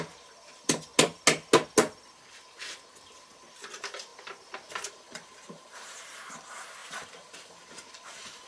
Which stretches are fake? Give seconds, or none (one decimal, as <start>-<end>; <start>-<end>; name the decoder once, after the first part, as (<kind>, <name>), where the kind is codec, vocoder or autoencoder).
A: 0.0-0.9 (vocoder, BigVGAN v2); 3.6-4.1; 4.7-8.5